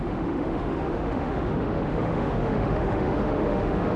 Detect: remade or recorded remade